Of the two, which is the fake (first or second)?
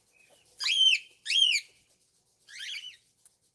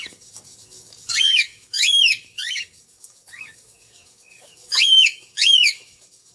second